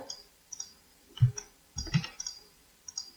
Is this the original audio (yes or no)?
no